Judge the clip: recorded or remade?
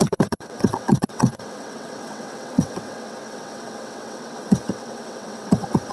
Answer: remade